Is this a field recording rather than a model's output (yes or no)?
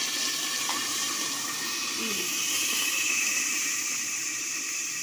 no